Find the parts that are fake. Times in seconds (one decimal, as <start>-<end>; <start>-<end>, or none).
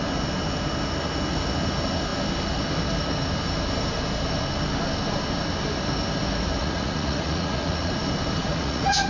6.6-7.9; 8.4-9.1